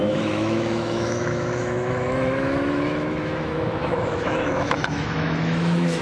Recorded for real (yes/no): no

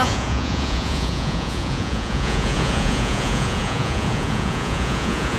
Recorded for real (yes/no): no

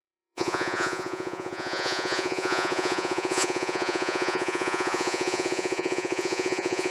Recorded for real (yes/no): no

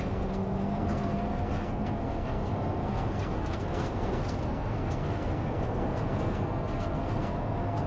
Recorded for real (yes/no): no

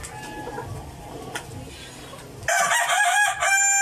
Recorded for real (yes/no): yes